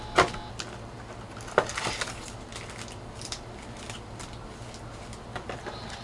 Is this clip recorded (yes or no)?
yes